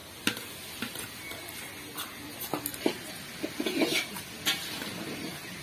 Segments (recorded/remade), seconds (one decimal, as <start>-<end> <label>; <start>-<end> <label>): 0.0-5.6 recorded